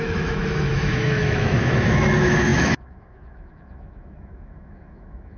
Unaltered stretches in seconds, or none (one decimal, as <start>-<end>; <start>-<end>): none